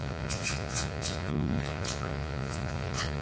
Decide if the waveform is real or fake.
fake